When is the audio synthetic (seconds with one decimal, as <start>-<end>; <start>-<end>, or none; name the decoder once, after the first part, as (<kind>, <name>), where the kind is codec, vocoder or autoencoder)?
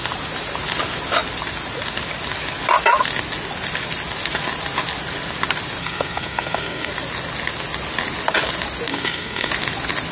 5.8-6.9 (codec, SNAC); 8.9-9.5